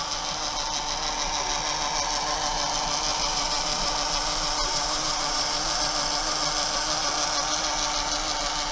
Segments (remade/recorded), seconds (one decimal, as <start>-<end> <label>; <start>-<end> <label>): 0.0-3.1 recorded; 3.1-3.9 remade; 3.9-4.6 recorded; 4.6-5.8 remade; 5.8-8.7 recorded